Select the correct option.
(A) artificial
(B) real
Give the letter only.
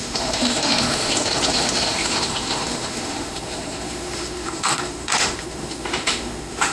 A